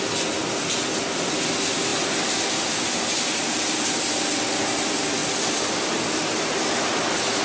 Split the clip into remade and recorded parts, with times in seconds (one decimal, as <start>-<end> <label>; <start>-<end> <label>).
0.0-7.4 recorded